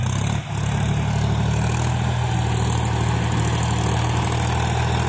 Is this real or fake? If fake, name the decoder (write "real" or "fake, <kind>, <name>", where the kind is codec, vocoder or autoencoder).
real